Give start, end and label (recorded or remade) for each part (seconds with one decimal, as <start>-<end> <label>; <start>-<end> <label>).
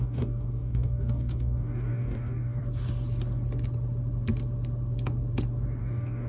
0.0-2.6 remade; 2.6-5.8 recorded; 5.8-6.3 remade